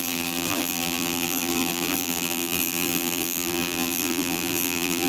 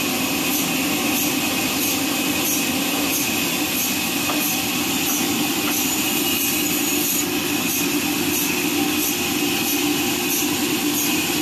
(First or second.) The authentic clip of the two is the second